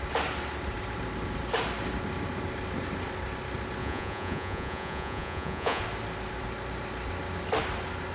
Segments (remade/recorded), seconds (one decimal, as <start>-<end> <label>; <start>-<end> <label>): 0.0-3.8 recorded; 3.8-5.8 remade; 5.8-8.1 recorded